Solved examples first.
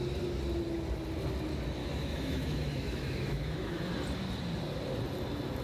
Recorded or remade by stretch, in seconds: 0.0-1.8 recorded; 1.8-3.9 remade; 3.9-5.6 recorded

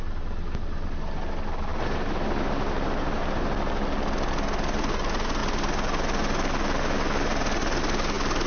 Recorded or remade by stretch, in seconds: 0.0-8.5 recorded